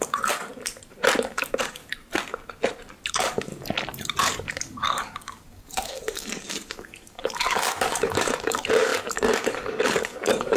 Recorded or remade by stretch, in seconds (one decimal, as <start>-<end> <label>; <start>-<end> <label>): 0.0-0.5 remade; 0.5-1.2 recorded; 1.2-1.8 remade; 1.8-3.1 recorded; 3.1-3.5 remade; 3.5-4.2 recorded; 4.2-10.6 remade